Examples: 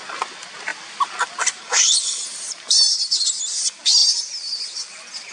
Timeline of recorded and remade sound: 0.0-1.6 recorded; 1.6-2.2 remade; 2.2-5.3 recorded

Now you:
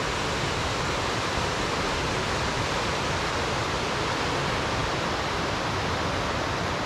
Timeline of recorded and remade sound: 0.0-6.9 recorded

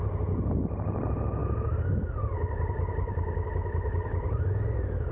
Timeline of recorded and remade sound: 0.0-5.1 recorded

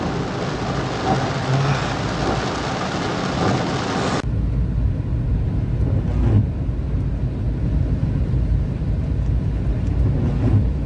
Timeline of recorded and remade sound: 0.0-10.9 recorded

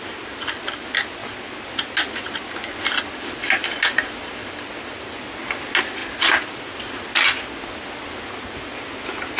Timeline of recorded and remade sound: 0.0-9.4 recorded

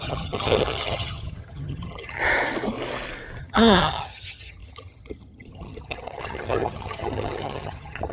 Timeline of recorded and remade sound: 0.0-2.2 remade; 2.2-3.4 recorded; 3.4-8.1 remade

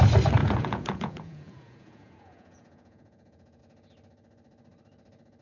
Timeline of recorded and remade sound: 0.0-0.4 recorded; 0.4-3.6 remade; 3.6-5.4 recorded